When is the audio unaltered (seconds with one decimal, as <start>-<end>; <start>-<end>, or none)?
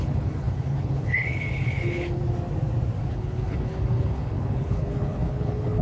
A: 2.2-3.1